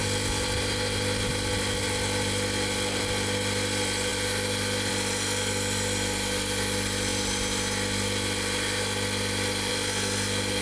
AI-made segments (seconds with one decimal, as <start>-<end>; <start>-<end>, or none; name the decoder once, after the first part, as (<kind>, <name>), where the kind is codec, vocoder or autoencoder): none